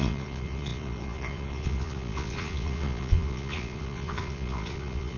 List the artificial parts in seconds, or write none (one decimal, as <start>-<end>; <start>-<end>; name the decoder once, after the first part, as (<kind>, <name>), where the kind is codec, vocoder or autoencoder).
0.0-5.2 (vocoder, Vocos)